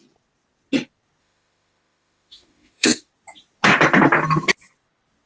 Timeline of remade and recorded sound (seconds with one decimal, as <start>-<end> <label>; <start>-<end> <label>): 0.0-1.2 recorded; 1.2-3.1 remade; 3.1-5.3 recorded